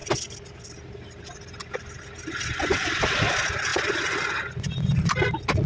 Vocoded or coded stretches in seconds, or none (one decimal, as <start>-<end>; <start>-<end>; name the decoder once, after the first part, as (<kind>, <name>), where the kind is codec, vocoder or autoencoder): none